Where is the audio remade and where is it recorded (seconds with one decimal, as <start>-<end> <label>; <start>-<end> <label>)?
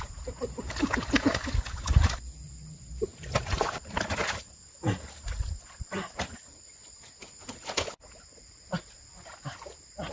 0.0-10.1 recorded